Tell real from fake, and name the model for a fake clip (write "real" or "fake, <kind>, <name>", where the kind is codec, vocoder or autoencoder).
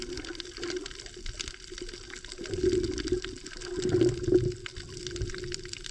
real